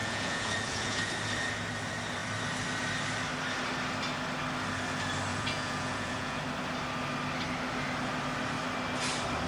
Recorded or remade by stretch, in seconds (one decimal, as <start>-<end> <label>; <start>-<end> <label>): 0.0-1.1 remade; 1.1-5.3 recorded; 5.3-6.4 remade; 6.4-9.5 recorded